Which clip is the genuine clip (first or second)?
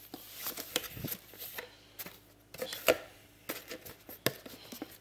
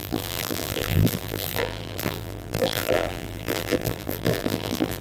first